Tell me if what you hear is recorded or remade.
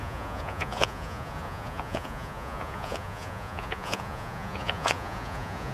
remade